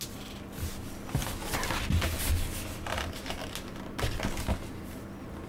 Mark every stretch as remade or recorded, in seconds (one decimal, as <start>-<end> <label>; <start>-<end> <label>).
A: 0.0-1.2 recorded; 1.2-1.8 remade; 1.8-5.5 recorded